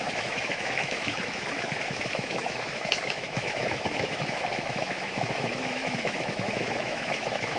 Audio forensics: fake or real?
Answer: fake